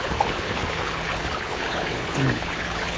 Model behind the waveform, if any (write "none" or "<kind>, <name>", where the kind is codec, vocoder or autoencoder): codec, HILCodec